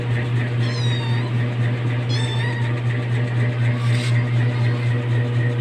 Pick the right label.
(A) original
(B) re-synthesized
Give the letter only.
A